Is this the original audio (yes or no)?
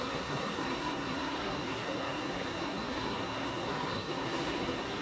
no